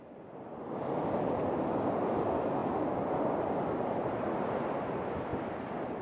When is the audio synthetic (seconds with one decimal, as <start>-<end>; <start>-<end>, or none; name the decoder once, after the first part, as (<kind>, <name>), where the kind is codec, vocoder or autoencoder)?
none

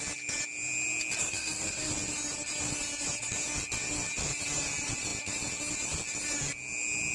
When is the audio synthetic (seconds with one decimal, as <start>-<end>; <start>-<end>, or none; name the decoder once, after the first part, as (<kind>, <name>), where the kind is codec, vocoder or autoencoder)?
1.2-1.9 (codec, SNAC)

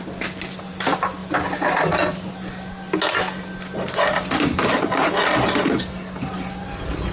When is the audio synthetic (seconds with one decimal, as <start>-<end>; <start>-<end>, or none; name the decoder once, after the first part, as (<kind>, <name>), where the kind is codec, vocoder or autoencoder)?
none

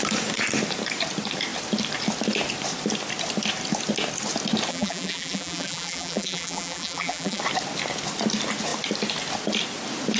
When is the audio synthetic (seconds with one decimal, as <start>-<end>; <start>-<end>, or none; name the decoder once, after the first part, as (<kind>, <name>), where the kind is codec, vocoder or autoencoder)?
4.7-7.4 (vocoder, BigVGAN v2)

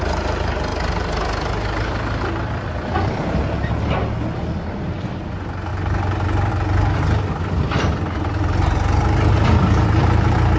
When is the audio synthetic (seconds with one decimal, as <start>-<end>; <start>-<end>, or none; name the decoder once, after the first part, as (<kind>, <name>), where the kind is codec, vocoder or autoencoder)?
0.7-3.7 (vocoder, BigVGAN v2)